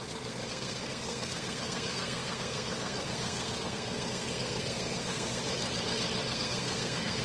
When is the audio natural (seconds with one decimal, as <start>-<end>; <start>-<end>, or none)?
5.4-6.3